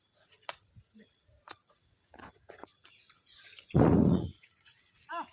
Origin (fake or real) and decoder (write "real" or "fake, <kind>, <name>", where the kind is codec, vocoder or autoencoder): fake, vocoder, Vocos